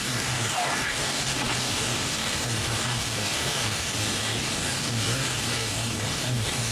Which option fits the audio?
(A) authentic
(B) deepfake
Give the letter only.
B